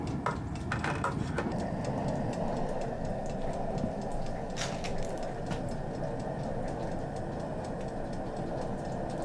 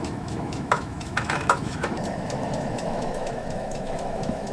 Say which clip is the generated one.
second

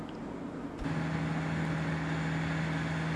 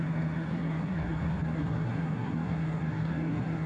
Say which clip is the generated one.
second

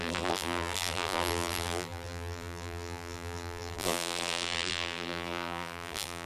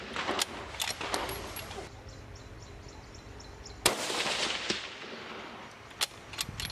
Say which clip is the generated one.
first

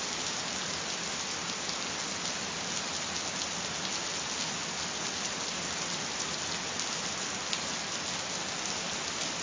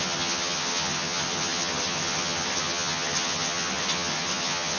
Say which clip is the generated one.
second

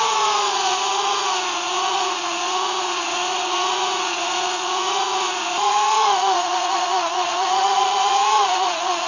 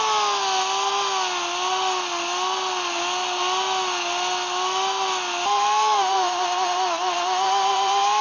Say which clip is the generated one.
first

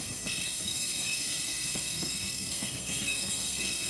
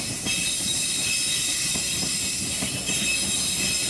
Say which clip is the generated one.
first